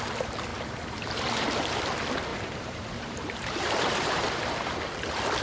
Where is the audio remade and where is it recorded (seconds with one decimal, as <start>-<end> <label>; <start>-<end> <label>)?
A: 0.0-2.3 recorded; 2.3-4.4 remade; 4.4-5.4 recorded

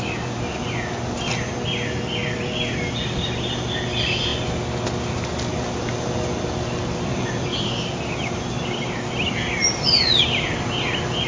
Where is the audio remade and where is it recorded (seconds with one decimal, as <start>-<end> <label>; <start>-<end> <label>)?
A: 0.0-11.3 recorded

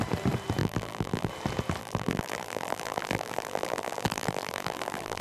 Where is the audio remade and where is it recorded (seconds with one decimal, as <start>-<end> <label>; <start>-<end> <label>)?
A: 0.0-0.6 recorded; 0.6-1.3 remade; 1.3-1.8 recorded; 1.8-5.2 remade

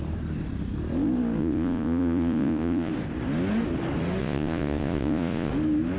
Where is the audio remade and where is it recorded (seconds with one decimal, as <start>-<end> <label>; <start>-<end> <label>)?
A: 0.0-1.4 recorded; 1.4-2.9 remade; 2.9-4.2 recorded; 4.2-5.5 remade; 5.5-6.0 recorded